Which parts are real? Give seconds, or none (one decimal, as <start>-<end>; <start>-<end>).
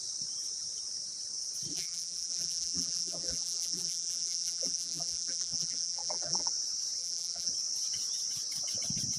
0.0-1.7; 6.5-7.0; 7.5-9.2